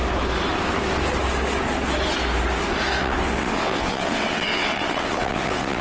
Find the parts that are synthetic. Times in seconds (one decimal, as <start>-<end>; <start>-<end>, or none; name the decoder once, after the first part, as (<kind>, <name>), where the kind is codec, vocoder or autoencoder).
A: 3.0-5.8 (vocoder, WaveNeXt)